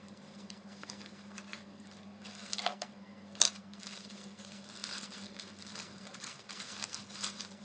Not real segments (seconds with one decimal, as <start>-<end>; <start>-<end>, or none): 0.0-7.6